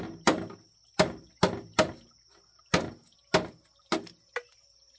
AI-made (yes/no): no